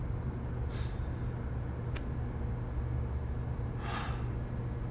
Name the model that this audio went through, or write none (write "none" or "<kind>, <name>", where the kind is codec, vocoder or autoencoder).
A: none